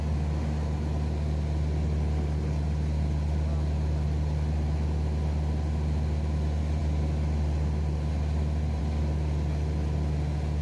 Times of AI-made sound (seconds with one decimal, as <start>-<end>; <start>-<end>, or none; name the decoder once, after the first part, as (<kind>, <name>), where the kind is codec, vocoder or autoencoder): none